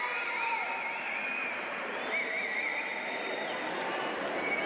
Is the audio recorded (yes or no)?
yes